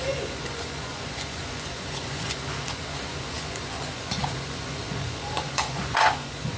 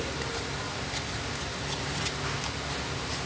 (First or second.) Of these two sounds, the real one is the second